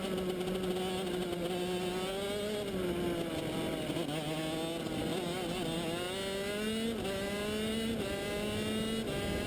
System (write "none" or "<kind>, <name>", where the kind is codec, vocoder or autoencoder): none